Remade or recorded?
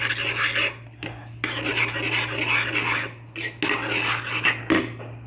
recorded